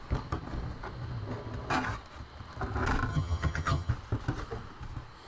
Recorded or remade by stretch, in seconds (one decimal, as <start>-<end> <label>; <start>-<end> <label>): 0.0-3.1 recorded; 3.1-3.9 remade; 3.9-5.3 recorded